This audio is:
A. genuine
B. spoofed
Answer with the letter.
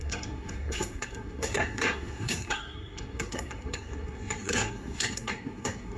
B